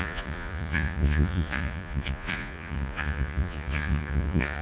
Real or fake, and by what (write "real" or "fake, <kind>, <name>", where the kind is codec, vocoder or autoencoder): fake, vocoder, Vocos